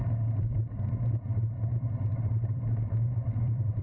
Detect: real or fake fake